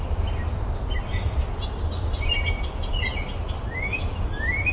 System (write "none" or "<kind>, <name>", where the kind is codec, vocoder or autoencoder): none